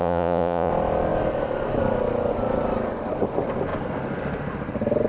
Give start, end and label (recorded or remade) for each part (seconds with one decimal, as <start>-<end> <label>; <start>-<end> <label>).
0.0-0.7 remade; 0.7-5.1 recorded